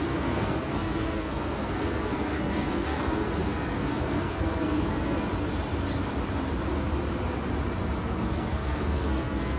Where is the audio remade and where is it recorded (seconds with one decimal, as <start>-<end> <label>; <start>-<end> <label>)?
0.0-5.3 remade; 5.3-8.0 recorded; 8.0-9.6 remade

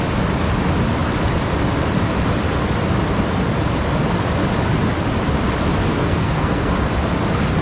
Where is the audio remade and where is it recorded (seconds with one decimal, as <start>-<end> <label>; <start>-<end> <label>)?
0.0-5.9 recorded; 5.9-6.7 remade; 6.7-7.6 recorded

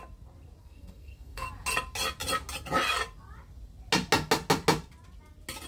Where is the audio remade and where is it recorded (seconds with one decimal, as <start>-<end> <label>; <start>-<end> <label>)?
0.0-0.6 recorded; 0.6-1.5 remade; 1.5-5.7 recorded